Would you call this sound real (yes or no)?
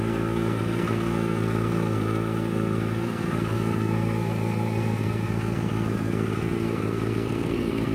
no